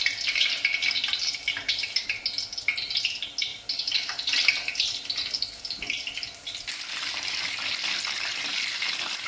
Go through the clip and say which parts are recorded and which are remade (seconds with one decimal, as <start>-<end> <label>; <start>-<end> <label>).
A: 0.0-9.3 recorded